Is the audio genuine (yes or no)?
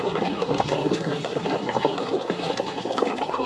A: no